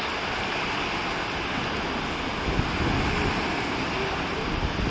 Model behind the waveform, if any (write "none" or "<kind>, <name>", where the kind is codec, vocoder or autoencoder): none